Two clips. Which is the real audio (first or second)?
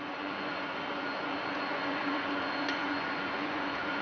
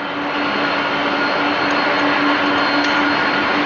second